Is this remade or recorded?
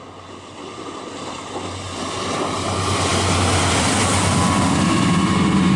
recorded